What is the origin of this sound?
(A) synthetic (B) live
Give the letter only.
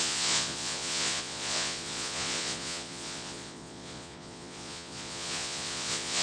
A